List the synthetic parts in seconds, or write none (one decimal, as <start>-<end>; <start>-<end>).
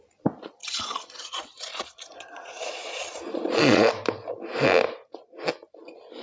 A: 0.6-3.9